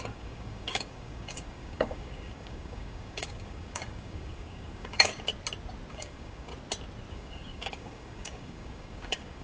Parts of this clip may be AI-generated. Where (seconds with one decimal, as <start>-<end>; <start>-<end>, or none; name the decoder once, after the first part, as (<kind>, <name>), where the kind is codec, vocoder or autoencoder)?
0.0-5.3 (codec, DAC); 5.9-6.5; 7.1-9.4